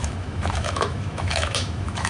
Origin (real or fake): fake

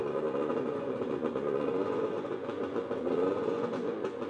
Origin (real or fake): fake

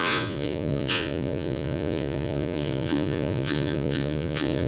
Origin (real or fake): fake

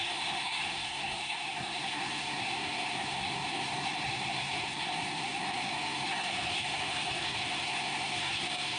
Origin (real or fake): fake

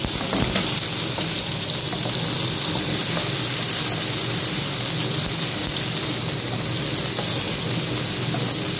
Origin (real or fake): real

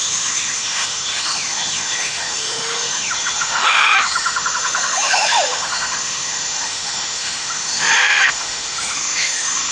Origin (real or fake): fake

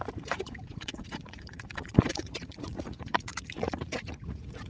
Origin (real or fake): fake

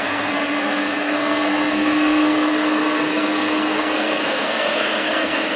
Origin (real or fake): fake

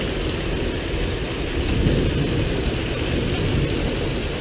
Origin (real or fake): real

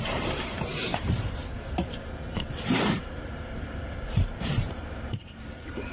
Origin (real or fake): fake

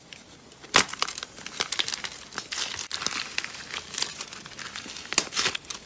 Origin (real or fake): real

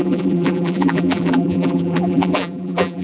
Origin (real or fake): fake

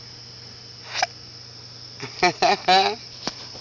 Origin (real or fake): real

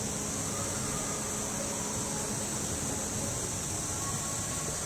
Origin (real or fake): real